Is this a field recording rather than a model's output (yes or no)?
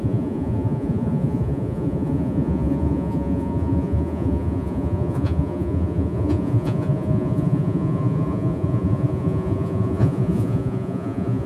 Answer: no